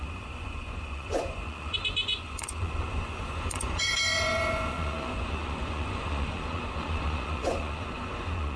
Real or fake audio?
fake